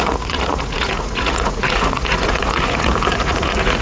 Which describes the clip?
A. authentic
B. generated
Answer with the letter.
B